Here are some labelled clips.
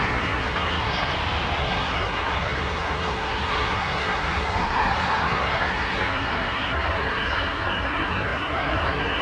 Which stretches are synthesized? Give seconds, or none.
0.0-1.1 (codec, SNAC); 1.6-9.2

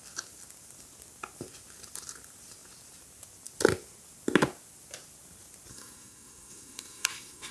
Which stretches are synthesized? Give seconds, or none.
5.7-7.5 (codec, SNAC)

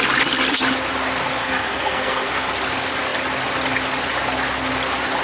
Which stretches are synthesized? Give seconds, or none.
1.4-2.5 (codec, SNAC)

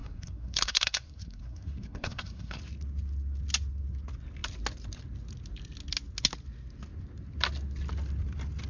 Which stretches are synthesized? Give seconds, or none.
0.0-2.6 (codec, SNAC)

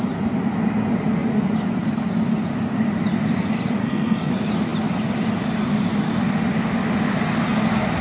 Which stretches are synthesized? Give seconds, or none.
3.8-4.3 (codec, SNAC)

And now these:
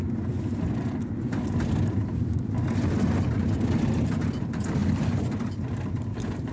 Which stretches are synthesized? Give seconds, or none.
none